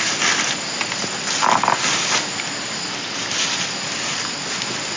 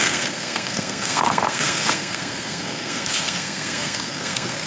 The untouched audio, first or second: first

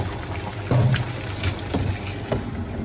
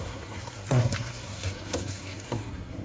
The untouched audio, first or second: first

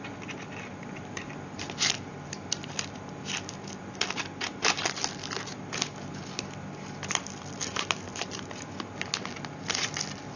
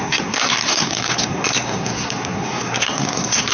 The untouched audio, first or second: first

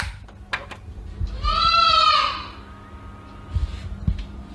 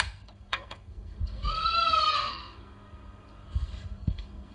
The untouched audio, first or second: first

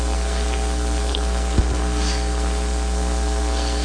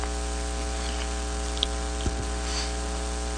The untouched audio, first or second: second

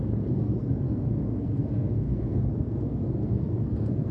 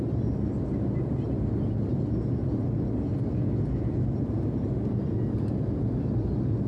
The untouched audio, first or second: second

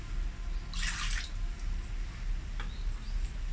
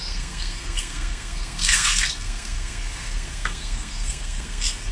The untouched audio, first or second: first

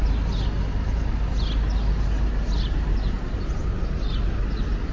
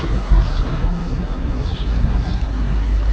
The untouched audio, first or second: first